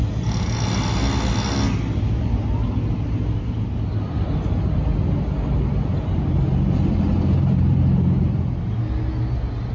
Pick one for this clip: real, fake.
real